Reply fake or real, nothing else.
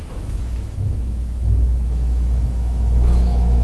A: fake